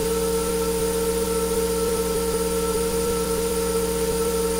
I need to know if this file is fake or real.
fake